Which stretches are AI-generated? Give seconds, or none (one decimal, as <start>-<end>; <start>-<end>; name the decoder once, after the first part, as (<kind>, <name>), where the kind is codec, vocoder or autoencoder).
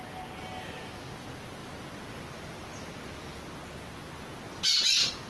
none